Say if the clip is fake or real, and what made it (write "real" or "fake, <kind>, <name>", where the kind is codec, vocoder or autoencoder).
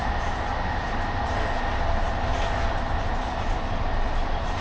real